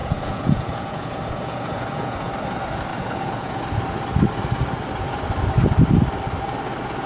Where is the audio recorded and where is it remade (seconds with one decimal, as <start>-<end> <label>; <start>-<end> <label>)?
0.0-2.3 remade; 2.3-2.9 recorded; 2.9-3.6 remade; 3.6-7.1 recorded